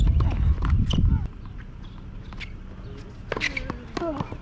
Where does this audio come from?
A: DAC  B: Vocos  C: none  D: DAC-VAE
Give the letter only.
C